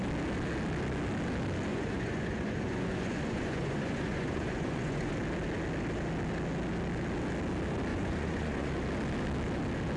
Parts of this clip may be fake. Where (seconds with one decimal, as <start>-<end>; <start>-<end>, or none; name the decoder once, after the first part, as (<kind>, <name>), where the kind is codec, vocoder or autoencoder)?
1.7-5.1 (vocoder, Vocos); 7.9-8.7